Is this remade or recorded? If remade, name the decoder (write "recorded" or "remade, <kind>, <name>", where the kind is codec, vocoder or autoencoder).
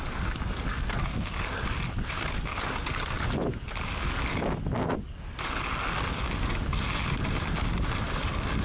recorded